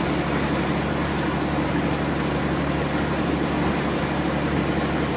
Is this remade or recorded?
recorded